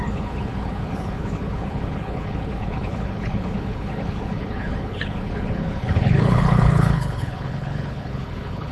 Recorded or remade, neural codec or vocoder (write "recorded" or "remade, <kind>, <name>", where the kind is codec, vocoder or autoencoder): remade, codec, HILCodec